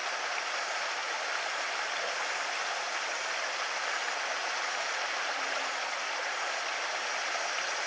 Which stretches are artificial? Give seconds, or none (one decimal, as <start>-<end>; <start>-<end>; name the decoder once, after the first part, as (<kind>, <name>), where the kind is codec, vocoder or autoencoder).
4.4-5.3 (vocoder, BigVGAN v2)